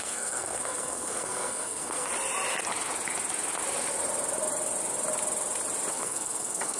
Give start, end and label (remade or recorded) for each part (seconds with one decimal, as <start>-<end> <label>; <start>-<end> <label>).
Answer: 0.0-2.1 remade; 2.1-5.9 recorded; 5.9-6.8 remade